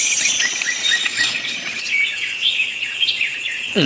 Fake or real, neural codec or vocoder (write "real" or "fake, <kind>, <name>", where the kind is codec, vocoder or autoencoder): fake, vocoder, Vocos